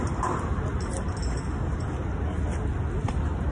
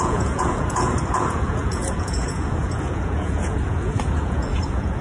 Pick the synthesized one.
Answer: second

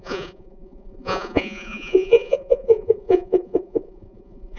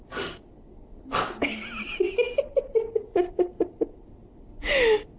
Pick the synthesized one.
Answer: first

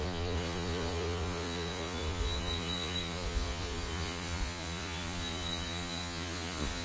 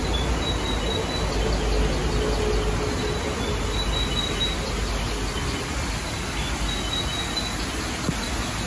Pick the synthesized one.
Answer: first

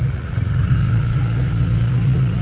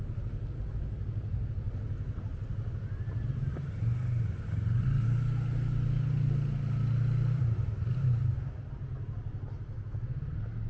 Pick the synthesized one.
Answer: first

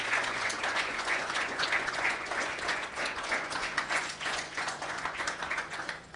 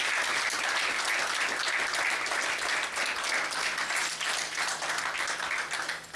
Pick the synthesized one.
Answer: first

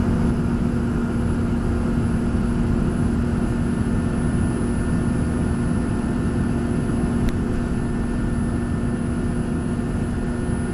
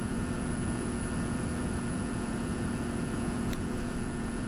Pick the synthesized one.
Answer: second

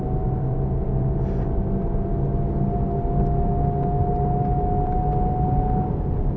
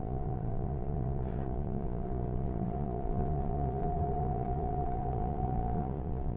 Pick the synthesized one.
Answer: second